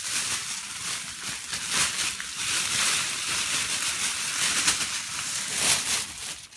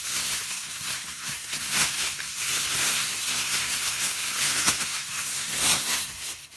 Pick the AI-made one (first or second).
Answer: second